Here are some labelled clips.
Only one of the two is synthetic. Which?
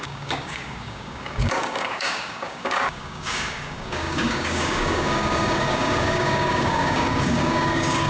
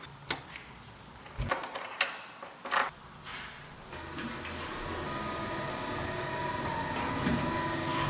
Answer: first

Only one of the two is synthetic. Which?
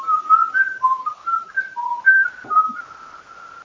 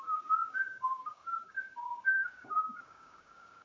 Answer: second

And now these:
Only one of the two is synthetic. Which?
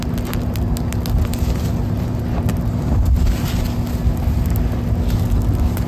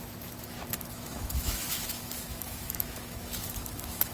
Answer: second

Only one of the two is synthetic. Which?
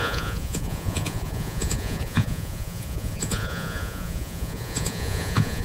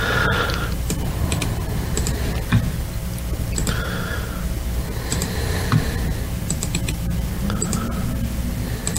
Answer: first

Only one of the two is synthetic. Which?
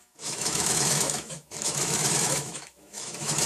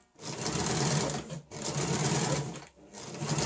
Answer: first